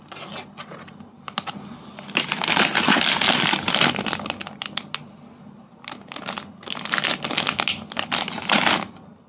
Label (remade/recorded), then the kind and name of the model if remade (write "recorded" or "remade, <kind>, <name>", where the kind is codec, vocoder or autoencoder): recorded